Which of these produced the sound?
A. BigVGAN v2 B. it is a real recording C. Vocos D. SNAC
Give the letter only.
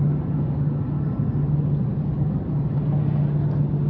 B